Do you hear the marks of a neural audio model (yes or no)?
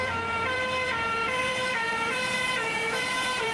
yes